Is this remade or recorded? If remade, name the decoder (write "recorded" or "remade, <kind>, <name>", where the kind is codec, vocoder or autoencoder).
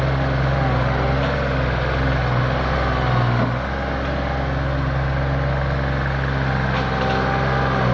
recorded